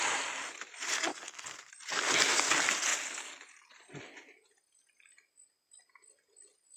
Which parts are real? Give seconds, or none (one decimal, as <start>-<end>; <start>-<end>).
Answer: 0.0-1.1; 1.7-6.8